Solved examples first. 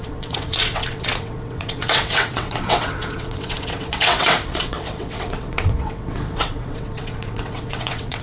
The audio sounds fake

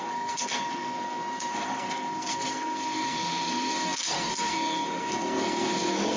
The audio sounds fake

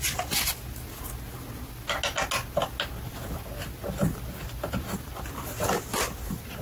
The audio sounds real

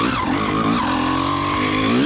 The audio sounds real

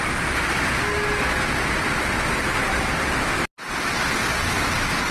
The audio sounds real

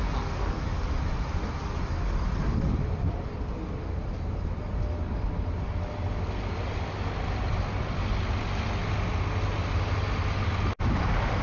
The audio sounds real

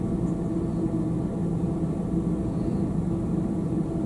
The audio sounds real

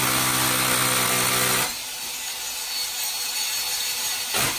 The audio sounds real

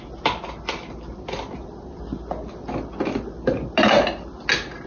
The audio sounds real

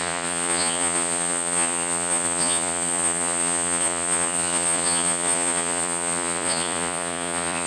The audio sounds fake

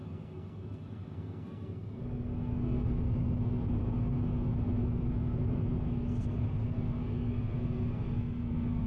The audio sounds fake